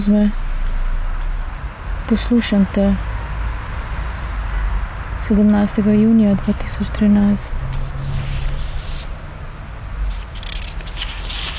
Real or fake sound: real